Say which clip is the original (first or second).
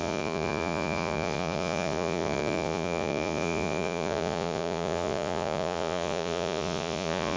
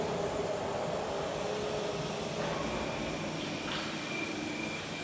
second